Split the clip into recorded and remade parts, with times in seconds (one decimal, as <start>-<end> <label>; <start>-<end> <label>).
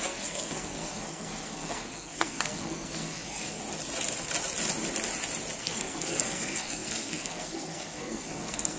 0.0-3.6 remade; 3.6-5.6 recorded; 5.6-8.8 remade